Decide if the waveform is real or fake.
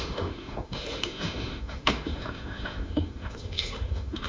fake